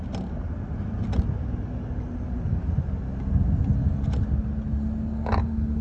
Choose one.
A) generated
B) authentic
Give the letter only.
B